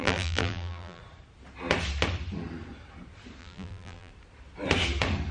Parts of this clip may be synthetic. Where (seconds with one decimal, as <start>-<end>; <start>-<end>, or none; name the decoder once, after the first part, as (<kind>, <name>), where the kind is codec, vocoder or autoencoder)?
0.0-1.0 (vocoder, BigVGAN v2); 3.4-4.1